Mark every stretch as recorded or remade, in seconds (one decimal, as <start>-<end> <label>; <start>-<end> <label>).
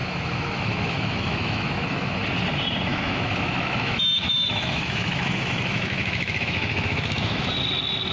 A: 0.0-2.2 remade; 2.2-2.9 recorded; 2.9-7.5 remade; 7.5-8.1 recorded